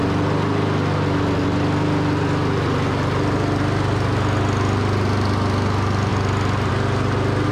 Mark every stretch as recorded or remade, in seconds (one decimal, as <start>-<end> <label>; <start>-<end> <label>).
0.0-7.5 recorded